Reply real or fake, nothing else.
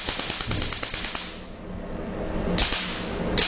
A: real